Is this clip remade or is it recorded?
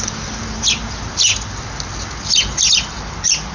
recorded